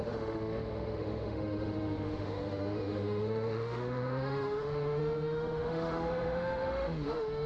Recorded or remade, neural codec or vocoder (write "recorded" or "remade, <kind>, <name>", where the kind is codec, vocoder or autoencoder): remade, autoencoder, DAC-VAE